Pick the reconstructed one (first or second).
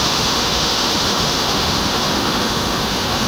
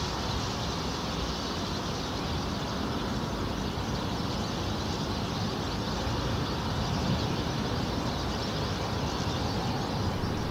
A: first